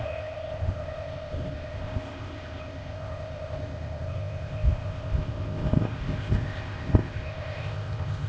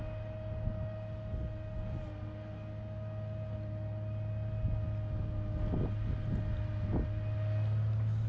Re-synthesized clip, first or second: first